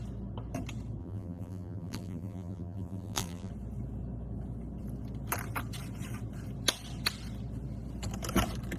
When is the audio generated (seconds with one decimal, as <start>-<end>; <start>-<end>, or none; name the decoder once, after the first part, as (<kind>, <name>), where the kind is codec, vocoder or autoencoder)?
1.0-3.5 (vocoder, BigVGAN v2)